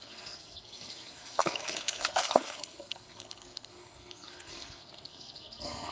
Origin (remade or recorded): remade